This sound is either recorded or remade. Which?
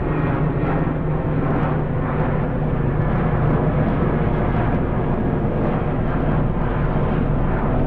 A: recorded